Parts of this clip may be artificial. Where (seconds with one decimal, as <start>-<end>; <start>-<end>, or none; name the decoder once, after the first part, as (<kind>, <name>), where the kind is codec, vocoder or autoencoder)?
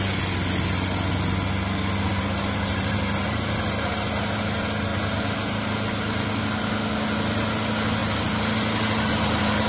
2.1-4.2 (vocoder, BigVGAN v2); 8.0-9.7